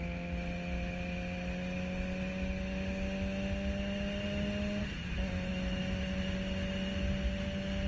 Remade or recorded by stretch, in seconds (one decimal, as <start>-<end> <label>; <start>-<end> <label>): 0.0-7.9 recorded